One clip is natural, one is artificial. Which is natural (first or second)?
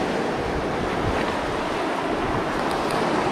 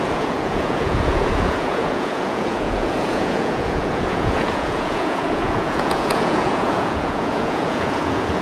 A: first